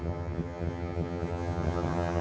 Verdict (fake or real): fake